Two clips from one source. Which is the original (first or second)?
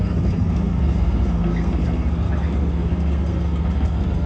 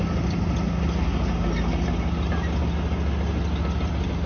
second